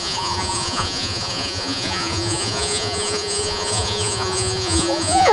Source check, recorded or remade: remade